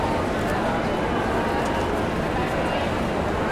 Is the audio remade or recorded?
recorded